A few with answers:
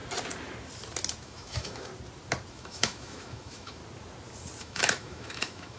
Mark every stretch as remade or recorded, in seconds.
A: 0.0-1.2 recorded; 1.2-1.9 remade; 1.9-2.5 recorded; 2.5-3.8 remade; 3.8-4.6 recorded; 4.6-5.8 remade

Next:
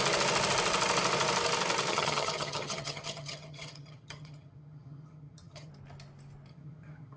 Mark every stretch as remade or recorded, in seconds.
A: 0.0-1.9 recorded; 1.9-5.7 remade; 5.7-6.5 recorded; 6.5-7.2 remade

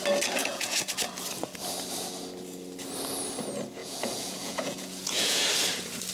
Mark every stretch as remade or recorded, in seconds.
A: 0.0-0.4 recorded; 0.4-0.9 remade; 0.9-3.8 recorded; 3.8-5.5 remade; 5.5-6.1 recorded

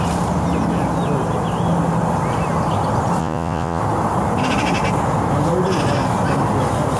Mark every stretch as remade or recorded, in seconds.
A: 0.0-3.2 recorded; 3.2-3.8 remade; 3.8-7.0 recorded